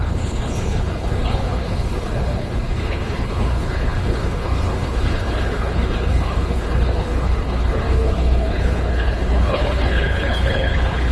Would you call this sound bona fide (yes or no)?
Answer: no